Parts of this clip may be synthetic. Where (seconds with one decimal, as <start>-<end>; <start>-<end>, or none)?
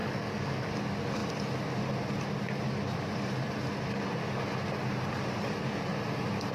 0.0-0.7